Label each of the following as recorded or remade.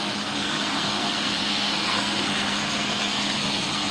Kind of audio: remade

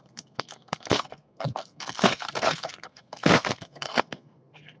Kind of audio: remade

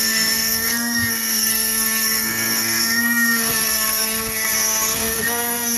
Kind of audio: remade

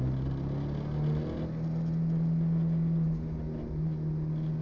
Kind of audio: recorded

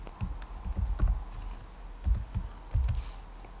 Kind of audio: recorded